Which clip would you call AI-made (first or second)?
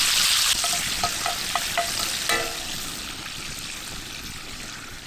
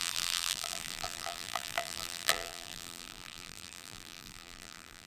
second